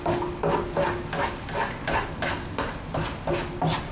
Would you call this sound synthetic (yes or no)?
no